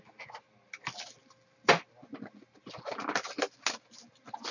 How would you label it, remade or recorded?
recorded